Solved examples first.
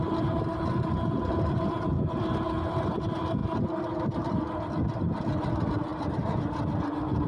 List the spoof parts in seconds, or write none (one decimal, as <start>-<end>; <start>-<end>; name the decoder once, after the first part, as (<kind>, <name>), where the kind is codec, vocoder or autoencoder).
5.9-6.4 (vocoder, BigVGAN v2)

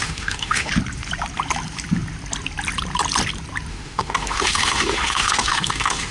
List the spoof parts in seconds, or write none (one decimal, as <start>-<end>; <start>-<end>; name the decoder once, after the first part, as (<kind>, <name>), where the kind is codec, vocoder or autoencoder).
0.0-0.7 (autoencoder, DAC-VAE); 3.7-6.1

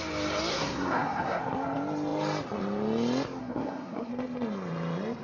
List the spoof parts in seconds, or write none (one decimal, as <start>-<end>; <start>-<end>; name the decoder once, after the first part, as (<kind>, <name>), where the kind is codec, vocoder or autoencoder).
0.5-1.4 (codec, SNAC); 3.4-4.1

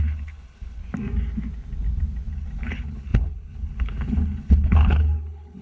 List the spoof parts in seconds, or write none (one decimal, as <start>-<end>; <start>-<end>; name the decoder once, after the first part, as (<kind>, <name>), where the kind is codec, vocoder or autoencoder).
0.0-0.8 (codec, HILCodec); 2.3-5.6

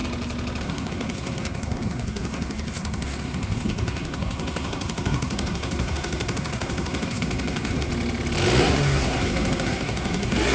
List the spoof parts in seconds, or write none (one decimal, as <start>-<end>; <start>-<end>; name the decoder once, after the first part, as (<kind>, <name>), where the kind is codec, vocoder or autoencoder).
0.6-7.9 (codec, SNAC); 8.6-10.5

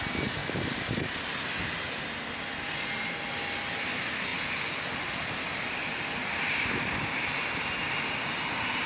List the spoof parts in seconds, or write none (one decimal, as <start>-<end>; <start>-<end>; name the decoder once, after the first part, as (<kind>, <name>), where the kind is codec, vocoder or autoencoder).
0.4-1.3 (vocoder, BigVGAN v2)

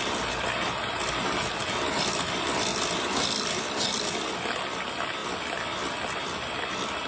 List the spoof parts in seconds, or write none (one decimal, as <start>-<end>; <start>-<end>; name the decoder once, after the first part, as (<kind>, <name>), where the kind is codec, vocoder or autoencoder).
none